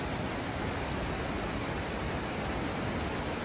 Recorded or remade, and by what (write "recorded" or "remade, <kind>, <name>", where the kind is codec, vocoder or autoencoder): recorded